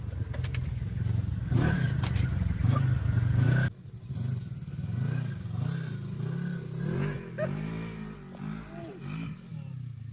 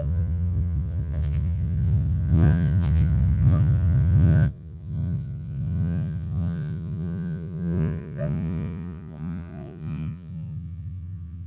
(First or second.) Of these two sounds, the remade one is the second